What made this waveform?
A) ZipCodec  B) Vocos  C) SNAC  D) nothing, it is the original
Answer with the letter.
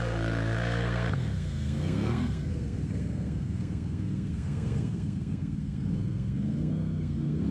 C